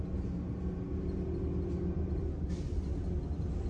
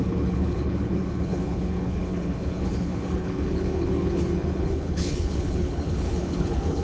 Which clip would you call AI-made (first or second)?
second